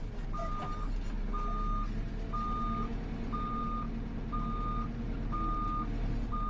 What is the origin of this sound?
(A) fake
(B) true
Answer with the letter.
B